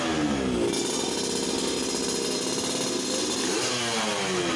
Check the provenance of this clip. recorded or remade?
recorded